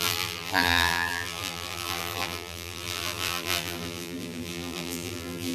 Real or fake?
fake